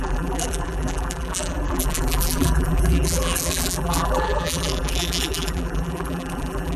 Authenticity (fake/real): fake